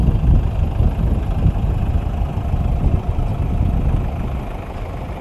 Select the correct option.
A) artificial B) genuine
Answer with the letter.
B